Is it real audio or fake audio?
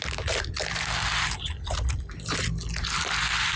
real